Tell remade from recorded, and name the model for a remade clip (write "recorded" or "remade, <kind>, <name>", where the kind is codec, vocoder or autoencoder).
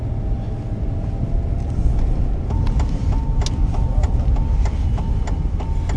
recorded